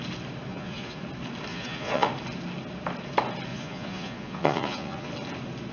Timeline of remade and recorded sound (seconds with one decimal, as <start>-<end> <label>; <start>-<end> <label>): 0.0-0.5 recorded; 0.5-1.0 remade; 1.0-1.5 recorded; 1.5-2.1 remade; 2.1-3.5 recorded; 3.5-5.1 remade; 5.1-5.7 recorded